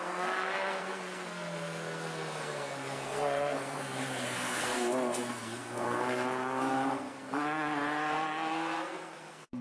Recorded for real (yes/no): no